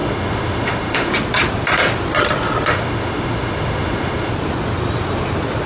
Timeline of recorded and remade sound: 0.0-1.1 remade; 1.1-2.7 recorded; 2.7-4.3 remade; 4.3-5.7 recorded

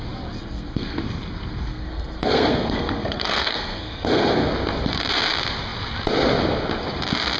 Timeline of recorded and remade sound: 0.0-0.4 recorded; 0.4-1.0 remade; 1.0-1.7 recorded; 1.7-4.5 remade; 4.5-7.4 recorded

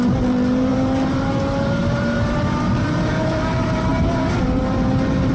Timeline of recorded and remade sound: 0.0-5.3 remade

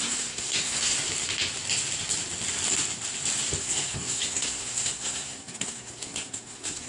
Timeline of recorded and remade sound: 0.0-0.9 remade; 0.9-3.6 recorded; 3.6-6.9 remade

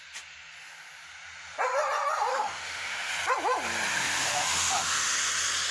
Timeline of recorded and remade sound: 0.0-2.3 recorded; 2.3-3.1 remade; 3.1-3.9 recorded; 3.9-5.1 remade; 5.1-5.7 recorded

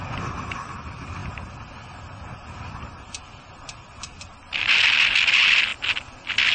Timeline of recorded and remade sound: 0.0-6.5 recorded

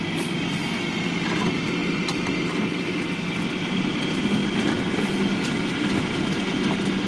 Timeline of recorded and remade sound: 0.0-4.4 recorded; 4.4-5.5 remade; 5.5-7.1 recorded